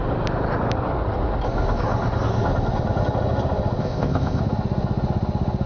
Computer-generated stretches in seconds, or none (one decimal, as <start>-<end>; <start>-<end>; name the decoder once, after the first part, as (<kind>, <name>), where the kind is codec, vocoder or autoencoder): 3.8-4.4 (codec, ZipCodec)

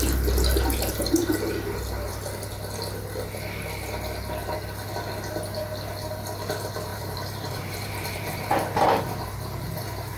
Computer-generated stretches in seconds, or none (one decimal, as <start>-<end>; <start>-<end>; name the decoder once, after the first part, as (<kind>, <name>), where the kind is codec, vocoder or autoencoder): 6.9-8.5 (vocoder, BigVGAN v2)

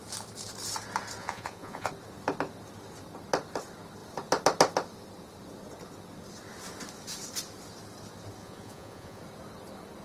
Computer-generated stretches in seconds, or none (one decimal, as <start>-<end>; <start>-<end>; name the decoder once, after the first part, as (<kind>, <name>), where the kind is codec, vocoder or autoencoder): 1.2-1.9 (vocoder, Vocos); 8.4-9.2

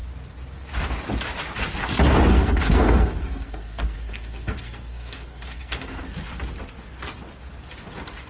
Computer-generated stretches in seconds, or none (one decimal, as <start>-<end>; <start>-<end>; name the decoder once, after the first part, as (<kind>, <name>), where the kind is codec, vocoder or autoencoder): 2.3-6.0 (codec, SNAC)

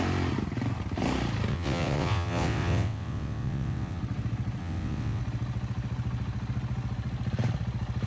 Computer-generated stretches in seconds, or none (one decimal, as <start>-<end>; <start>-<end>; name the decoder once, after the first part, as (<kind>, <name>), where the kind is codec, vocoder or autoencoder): 1.5-4.0 (vocoder, WaveNeXt); 4.6-5.2

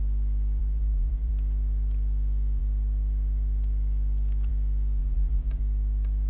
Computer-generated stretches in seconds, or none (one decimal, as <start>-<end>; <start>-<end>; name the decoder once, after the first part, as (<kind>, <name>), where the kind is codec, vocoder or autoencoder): 0.6-1.3 (vocoder, Vocos); 5.0-5.6

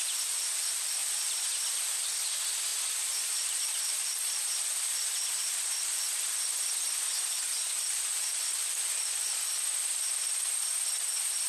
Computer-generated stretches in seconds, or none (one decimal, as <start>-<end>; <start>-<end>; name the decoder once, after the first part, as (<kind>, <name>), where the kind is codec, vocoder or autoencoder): 1.0-2.3 (vocoder, BigVGAN v2); 2.7-4.4